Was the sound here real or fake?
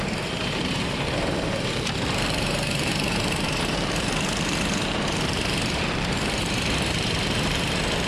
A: fake